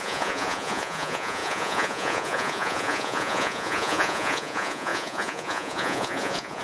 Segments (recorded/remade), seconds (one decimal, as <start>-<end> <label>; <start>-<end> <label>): 0.0-6.6 remade